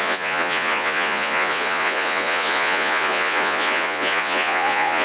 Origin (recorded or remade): remade